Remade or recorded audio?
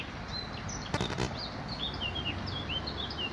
recorded